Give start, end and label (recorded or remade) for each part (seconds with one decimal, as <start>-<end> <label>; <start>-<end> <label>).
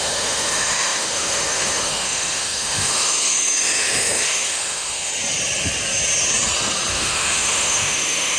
0.0-5.1 remade; 5.1-6.9 recorded; 6.9-8.4 remade